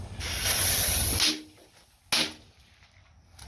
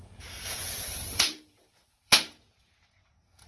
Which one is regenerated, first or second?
second